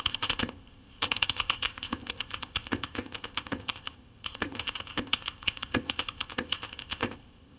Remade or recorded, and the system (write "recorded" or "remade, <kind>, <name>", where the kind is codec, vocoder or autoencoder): remade, codec, ZipCodec